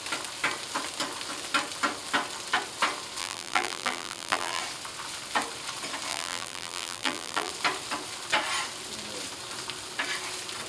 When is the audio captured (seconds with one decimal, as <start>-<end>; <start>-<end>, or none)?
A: 0.0-3.2; 4.6-6.1; 7.5-10.7